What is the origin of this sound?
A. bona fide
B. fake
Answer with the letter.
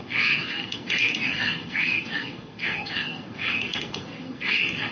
B